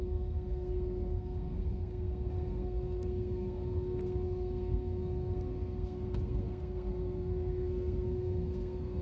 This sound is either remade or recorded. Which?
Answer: remade